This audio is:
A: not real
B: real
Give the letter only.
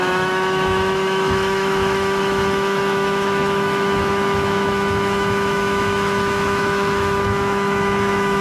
A